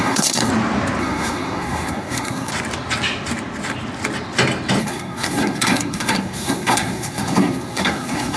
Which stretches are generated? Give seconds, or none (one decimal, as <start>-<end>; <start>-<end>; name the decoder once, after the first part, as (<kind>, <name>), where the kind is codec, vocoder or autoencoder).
0.0-0.5 (codec, SNAC); 1.0-2.5; 4.8-8.4